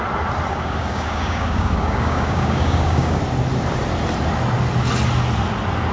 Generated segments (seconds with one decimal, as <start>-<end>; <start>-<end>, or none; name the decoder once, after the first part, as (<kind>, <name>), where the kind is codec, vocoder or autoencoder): 0.5-3.2 (codec, DAC)

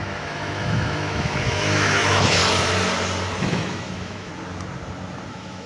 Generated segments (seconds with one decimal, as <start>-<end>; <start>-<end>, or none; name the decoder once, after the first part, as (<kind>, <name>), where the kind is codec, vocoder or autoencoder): 0.0-2.4 (autoencoder, DAC-VAE); 3.4-4.3; 5.3-5.7

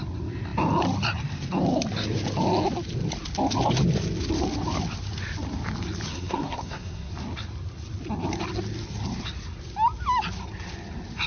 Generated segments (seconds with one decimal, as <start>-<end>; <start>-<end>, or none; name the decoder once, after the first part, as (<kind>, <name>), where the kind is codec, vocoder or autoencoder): 6.1-7.1 (codec, SNAC)

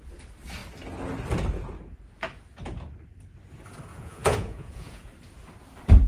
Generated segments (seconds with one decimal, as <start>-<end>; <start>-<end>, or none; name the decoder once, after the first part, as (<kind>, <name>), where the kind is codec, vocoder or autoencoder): 3.9-5.1 (vocoder, Vocos)

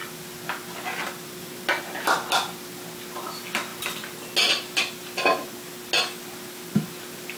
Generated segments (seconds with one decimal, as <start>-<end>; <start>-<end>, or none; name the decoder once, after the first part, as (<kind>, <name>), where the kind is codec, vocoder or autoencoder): none